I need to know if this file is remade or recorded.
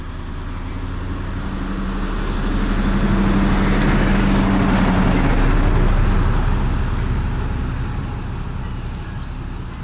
recorded